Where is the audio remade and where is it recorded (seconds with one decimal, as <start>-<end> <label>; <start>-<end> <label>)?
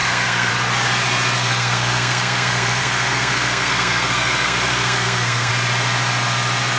0.0-0.5 remade; 0.5-1.4 recorded; 1.4-5.5 remade; 5.5-6.8 recorded